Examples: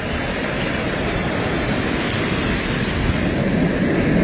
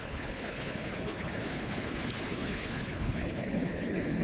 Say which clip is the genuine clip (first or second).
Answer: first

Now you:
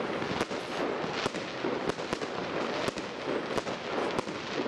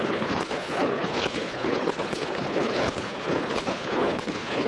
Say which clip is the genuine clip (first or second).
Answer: first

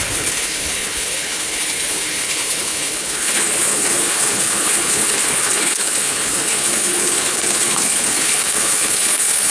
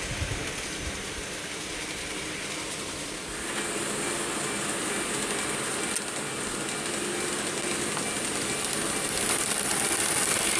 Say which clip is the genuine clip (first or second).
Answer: second